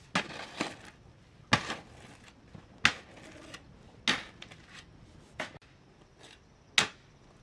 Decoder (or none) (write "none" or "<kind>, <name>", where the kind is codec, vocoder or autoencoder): none